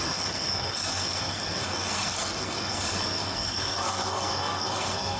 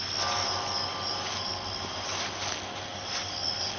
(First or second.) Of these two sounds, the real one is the second